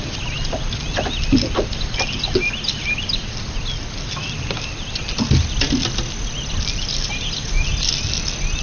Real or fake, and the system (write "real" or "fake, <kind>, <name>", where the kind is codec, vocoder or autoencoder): real